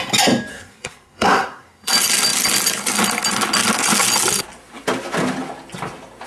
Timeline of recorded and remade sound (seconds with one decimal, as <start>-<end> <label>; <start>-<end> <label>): 0.0-0.5 recorded; 0.5-1.9 remade; 1.9-6.3 recorded